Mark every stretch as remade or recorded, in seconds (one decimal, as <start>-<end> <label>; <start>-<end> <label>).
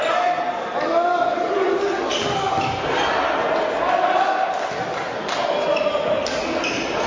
0.0-7.1 recorded